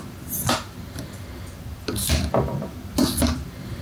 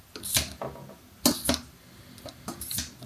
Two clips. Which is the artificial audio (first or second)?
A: first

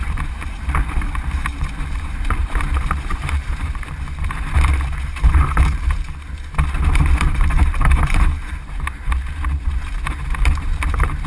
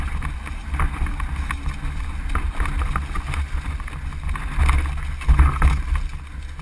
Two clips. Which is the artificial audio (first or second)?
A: first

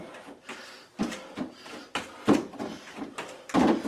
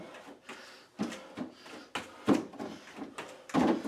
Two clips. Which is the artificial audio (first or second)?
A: first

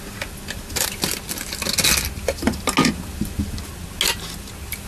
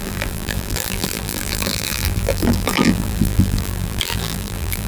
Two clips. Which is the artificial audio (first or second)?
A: second